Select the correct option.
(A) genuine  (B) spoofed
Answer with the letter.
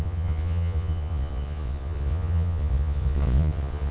B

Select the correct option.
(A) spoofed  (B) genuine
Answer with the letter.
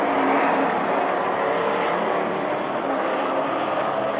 A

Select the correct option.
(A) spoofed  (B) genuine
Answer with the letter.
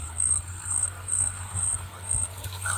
A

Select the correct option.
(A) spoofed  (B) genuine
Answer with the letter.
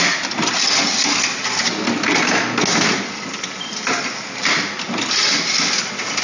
B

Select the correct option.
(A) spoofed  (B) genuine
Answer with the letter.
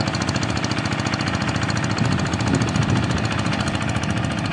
B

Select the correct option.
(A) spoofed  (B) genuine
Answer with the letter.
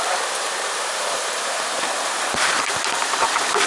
A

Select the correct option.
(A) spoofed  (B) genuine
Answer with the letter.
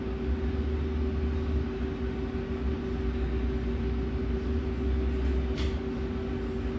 B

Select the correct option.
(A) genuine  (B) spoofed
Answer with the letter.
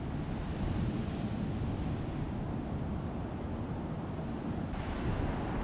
A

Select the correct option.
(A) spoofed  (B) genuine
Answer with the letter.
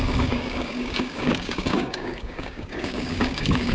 A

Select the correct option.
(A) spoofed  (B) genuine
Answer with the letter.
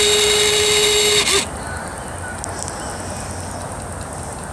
B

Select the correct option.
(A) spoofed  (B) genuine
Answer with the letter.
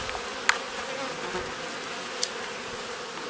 B